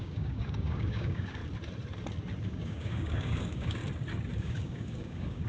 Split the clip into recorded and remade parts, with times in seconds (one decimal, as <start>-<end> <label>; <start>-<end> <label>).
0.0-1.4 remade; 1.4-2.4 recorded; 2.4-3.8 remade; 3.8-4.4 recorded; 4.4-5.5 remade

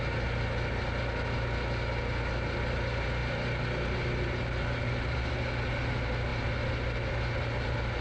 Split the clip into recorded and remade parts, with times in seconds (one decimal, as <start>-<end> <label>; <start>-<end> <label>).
0.0-8.0 recorded

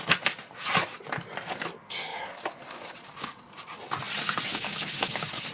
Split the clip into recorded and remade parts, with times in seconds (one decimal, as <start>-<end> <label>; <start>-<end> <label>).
0.0-2.1 recorded; 2.1-3.5 remade; 3.5-4.5 recorded; 4.5-5.5 remade

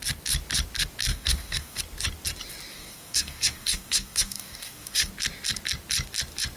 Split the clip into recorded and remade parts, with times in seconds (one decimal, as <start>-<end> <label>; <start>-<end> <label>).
0.0-1.1 recorded; 1.1-1.8 remade; 1.8-2.7 recorded; 2.7-5.1 remade; 5.1-6.6 recorded

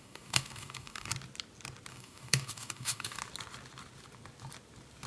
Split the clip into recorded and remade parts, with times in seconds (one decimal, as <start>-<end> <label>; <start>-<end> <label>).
0.0-1.1 remade; 1.1-1.9 recorded; 1.9-3.2 remade; 3.2-5.1 recorded